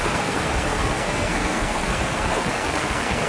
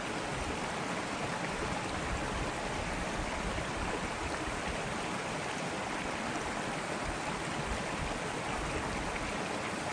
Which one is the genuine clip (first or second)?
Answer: second